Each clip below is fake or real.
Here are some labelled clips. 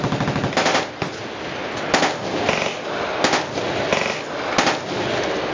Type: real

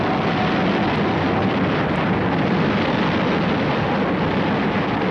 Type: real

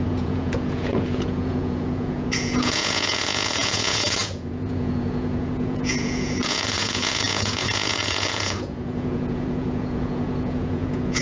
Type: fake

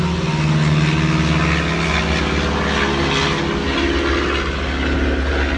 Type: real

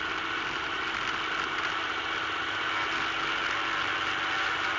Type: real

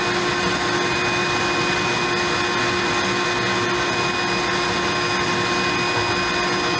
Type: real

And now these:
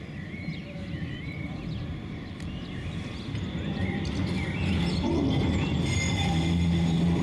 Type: real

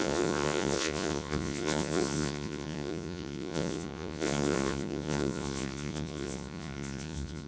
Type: fake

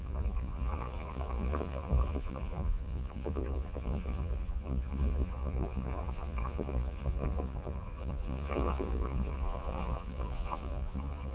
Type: fake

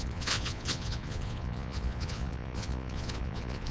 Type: fake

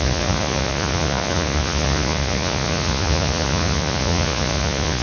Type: fake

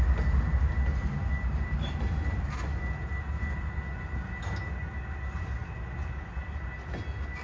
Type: real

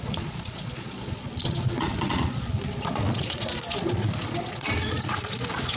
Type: fake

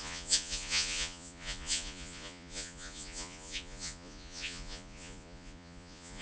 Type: fake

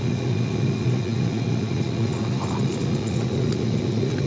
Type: fake